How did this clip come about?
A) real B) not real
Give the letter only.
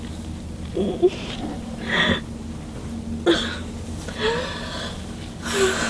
A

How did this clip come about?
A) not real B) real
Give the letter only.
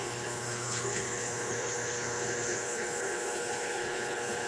A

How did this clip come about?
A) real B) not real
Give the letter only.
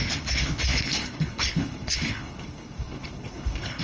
B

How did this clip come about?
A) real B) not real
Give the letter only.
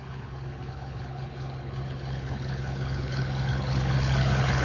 B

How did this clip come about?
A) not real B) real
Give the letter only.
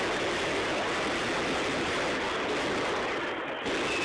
B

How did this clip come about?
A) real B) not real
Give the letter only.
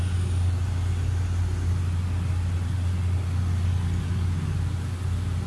A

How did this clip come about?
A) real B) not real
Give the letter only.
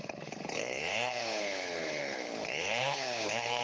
B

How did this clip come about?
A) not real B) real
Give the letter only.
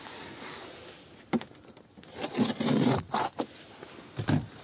B